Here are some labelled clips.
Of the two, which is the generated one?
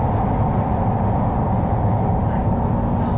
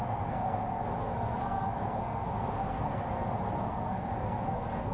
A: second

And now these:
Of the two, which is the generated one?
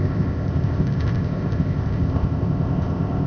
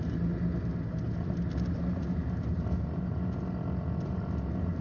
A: first